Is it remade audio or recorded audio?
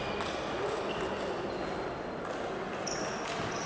recorded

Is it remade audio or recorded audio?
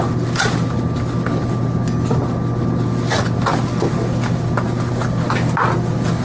recorded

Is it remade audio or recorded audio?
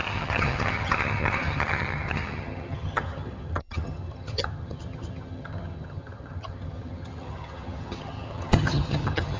remade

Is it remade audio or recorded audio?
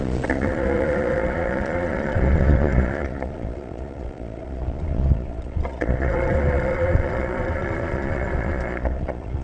remade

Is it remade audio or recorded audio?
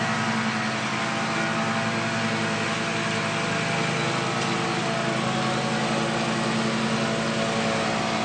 recorded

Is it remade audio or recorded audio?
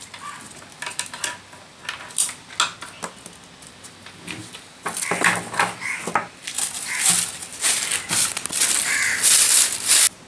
recorded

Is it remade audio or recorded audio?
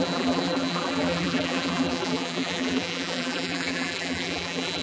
remade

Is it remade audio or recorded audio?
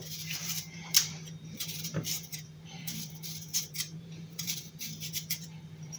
remade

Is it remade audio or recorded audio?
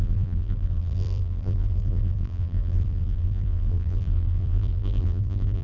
remade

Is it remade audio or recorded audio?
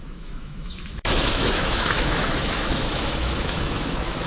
remade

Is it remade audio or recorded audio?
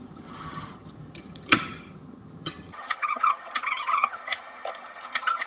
remade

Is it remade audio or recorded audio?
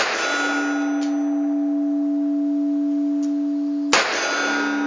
recorded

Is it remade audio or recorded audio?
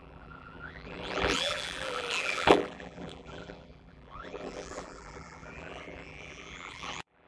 remade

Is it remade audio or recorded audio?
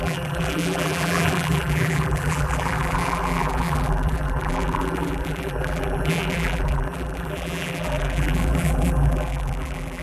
remade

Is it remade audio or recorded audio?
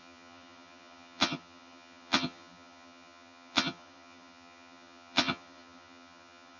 remade